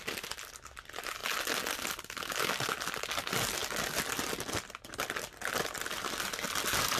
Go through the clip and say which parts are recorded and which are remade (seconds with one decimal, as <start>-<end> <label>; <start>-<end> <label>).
0.0-7.0 recorded